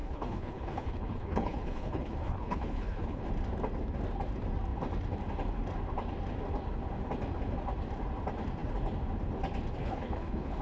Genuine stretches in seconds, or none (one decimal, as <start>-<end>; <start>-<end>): 3.3-9.8